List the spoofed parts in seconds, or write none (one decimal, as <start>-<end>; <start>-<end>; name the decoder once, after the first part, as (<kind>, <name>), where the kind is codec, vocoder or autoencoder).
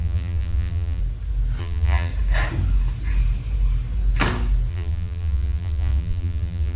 0.0-1.0 (vocoder, BigVGAN v2); 1.6-2.1; 4.7-6.8